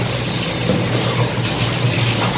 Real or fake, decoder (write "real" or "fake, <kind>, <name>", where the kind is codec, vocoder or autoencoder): real